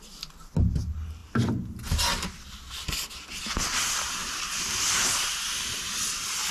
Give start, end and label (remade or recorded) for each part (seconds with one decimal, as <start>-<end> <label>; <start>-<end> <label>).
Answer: 0.0-6.5 recorded